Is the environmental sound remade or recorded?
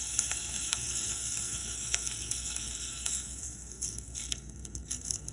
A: remade